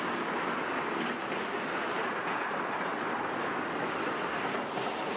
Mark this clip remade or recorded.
recorded